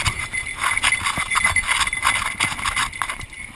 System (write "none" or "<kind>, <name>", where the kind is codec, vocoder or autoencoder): none